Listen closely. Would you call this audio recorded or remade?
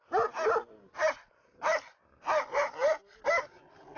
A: recorded